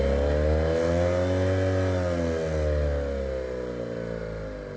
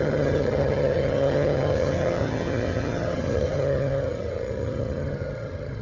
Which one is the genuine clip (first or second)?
first